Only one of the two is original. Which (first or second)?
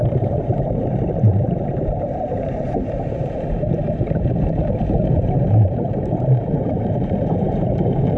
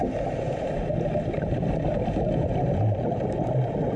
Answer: second